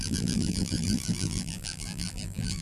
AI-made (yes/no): yes